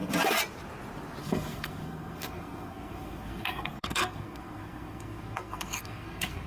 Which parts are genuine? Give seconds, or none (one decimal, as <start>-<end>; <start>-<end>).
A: 0.0-1.2